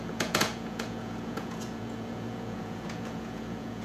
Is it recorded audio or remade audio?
remade